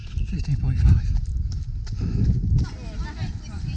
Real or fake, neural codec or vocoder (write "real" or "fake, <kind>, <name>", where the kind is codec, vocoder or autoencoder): real